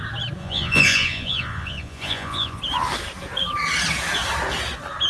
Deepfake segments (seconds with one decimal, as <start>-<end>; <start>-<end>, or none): 0.4-2.6